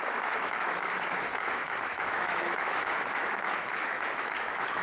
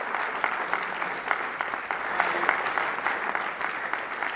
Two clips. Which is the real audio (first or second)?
second